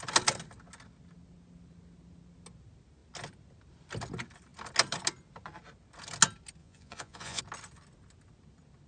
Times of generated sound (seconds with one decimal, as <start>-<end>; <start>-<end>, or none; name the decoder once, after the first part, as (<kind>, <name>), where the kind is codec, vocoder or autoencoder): 6.6-7.4 (vocoder, Vocos)